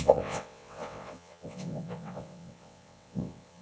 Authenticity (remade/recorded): remade